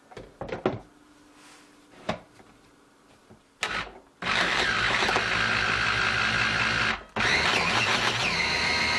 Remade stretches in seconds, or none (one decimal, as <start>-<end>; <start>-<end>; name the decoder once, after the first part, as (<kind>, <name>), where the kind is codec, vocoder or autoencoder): none